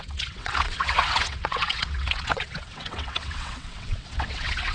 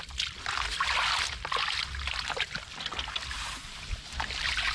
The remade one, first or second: first